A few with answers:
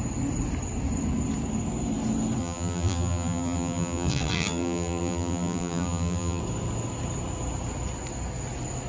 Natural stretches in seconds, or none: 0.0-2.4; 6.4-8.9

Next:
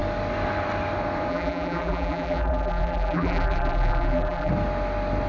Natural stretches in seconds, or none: 0.0-1.3; 4.5-5.3